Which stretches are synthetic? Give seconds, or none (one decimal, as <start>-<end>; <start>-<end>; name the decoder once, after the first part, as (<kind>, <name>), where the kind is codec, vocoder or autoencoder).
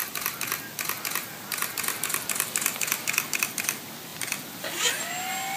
none